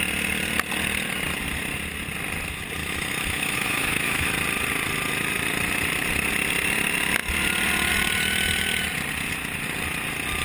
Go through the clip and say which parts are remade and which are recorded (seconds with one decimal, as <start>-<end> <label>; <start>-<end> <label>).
0.0-2.8 recorded; 2.8-4.3 remade; 4.3-10.4 recorded